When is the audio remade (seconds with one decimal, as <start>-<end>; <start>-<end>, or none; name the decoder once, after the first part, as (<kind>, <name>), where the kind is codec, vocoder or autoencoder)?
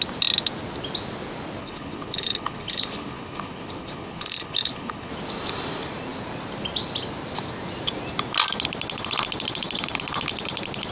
1.6-5.1 (codec, HILCodec)